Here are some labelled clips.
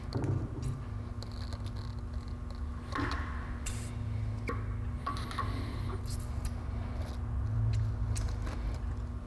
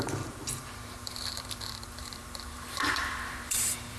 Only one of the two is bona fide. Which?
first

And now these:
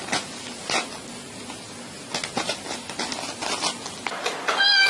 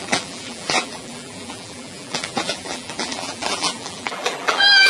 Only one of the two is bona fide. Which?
first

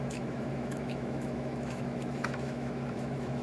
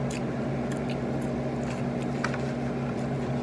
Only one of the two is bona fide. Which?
second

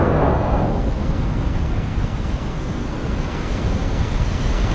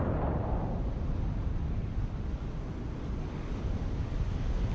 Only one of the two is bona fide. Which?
second